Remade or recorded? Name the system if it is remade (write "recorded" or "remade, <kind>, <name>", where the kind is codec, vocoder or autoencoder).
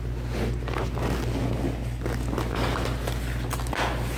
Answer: recorded